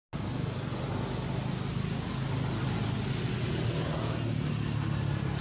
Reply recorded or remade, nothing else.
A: recorded